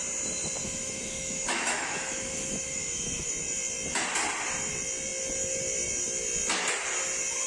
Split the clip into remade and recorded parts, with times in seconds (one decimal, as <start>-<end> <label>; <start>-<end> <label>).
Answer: 0.0-0.6 recorded; 0.6-3.3 remade; 3.3-7.5 recorded